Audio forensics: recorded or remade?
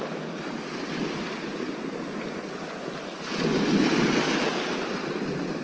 recorded